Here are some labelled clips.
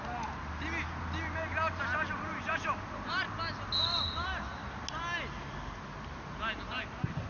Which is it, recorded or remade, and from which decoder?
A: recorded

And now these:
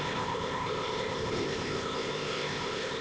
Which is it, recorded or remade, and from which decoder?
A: remade, codec, ZipCodec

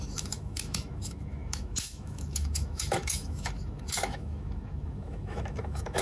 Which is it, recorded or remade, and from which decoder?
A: remade, autoencoder, DAC-VAE